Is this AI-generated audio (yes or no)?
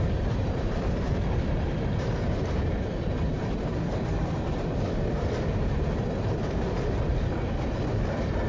yes